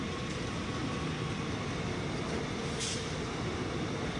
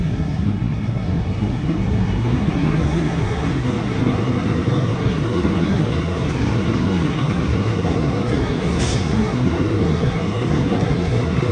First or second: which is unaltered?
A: first